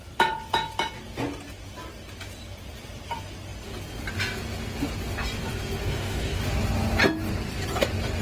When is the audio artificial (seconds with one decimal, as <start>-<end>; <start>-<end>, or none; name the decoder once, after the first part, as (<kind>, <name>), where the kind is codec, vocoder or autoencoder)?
5.8-6.4 (codec, DAC)